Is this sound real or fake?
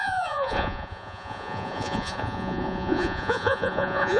fake